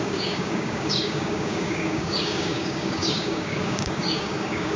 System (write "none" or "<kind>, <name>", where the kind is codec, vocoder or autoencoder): codec, DAC